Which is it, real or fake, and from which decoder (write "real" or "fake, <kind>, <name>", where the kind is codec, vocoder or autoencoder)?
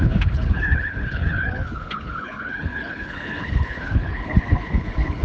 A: fake, codec, HILCodec